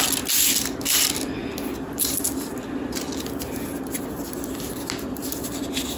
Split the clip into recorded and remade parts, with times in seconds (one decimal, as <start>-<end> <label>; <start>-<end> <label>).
0.0-6.0 recorded